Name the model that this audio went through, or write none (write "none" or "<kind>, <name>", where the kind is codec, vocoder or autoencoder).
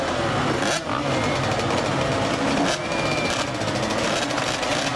none